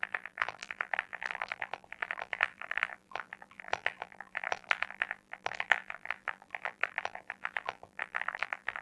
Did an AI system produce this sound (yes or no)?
yes